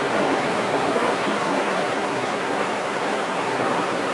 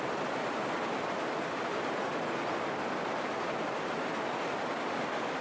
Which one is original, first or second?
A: second